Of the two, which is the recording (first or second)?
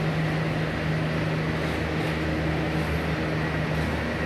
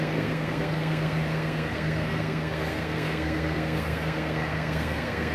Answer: first